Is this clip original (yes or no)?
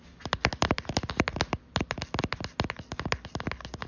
yes